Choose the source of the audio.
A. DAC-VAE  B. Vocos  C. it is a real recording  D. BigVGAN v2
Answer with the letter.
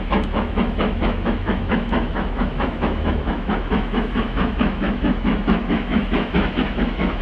A